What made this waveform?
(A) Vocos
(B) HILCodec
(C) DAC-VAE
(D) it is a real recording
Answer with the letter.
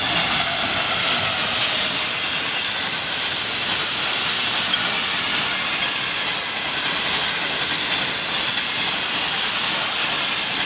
D